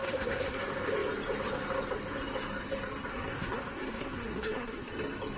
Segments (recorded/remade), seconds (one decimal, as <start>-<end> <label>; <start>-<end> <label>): 0.0-0.6 remade; 0.6-3.1 recorded; 3.1-4.9 remade; 4.9-5.4 recorded